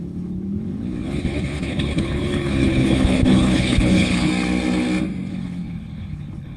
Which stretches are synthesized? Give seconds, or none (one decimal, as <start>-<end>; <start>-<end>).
0.0-4.3; 5.3-6.6